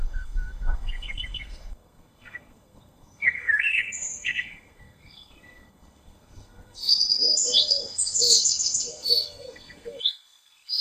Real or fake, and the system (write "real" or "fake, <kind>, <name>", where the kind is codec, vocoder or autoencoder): fake, codec, SNAC